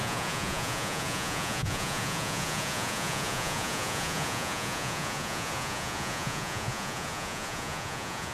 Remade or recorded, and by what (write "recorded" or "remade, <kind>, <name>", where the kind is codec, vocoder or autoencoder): remade, vocoder, Vocos